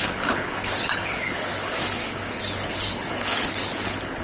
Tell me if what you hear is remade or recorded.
remade